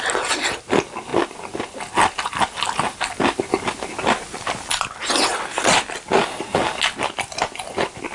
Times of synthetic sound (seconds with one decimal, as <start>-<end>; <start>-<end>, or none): none